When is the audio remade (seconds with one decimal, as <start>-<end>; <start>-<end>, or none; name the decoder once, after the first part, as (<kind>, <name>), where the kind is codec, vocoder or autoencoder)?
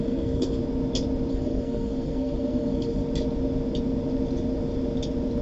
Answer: 0.0-0.6 (codec, SNAC); 1.3-3.0